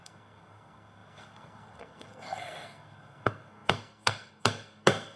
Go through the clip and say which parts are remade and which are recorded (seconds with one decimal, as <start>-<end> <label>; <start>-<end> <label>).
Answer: 0.0-5.2 remade